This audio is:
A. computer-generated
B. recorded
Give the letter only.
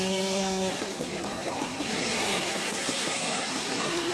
A